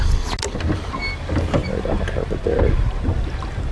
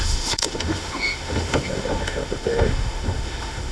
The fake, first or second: second